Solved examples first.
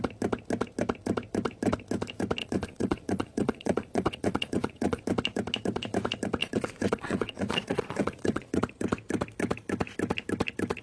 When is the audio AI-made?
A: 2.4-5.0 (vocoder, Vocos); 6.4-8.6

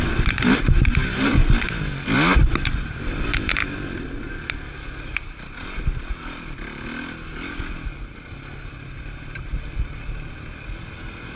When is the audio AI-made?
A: none

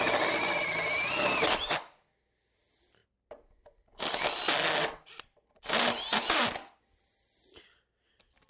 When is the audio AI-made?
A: none